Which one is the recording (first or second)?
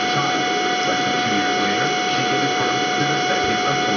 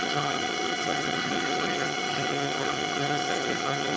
first